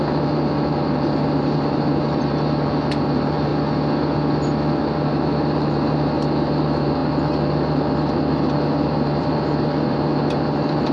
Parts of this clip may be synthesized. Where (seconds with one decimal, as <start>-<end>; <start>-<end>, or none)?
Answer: 0.0-3.5; 5.1-10.9